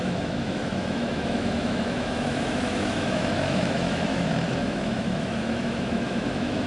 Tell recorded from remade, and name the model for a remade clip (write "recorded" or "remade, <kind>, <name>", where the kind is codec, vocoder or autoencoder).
remade, autoencoder, DAC-VAE